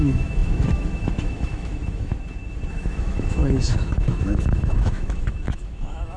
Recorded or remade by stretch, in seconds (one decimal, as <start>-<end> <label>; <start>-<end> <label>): 0.0-2.1 remade; 2.1-2.7 recorded; 2.7-6.2 remade